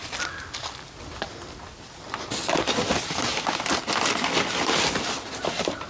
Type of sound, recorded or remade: recorded